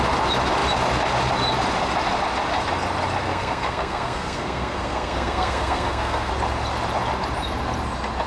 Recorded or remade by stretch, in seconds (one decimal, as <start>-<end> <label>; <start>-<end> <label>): 0.0-3.3 recorded; 3.3-6.3 remade; 6.3-8.3 recorded

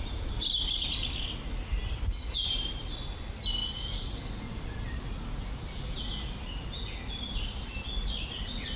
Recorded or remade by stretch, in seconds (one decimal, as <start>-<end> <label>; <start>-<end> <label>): 0.0-8.8 recorded

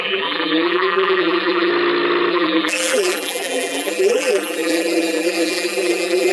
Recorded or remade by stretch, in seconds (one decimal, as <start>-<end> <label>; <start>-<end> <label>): 0.0-1.7 remade; 1.7-2.3 recorded; 2.3-6.3 remade

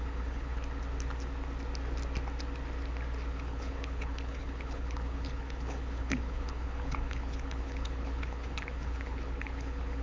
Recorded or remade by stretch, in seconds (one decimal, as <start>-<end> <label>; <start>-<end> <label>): 0.0-0.5 remade; 0.5-3.3 recorded; 3.3-10.0 remade